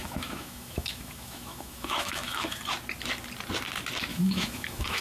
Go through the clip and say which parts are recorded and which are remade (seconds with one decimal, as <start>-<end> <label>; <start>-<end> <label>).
0.0-2.6 remade; 2.6-4.1 recorded; 4.1-5.0 remade